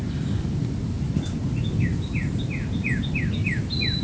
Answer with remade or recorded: recorded